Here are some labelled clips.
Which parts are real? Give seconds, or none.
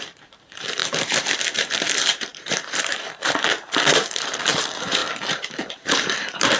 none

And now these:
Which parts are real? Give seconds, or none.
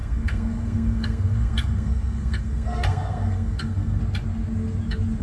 4.0-5.2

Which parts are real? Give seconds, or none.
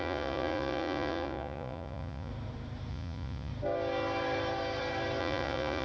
2.3-2.9; 3.5-5.2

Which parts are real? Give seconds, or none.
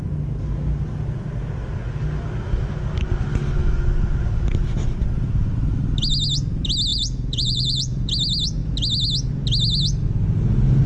0.0-6.9; 8.1-10.9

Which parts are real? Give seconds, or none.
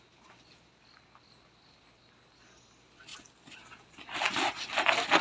0.0-5.2